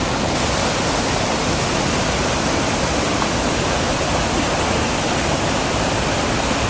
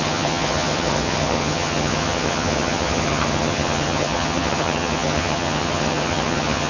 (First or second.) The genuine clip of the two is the first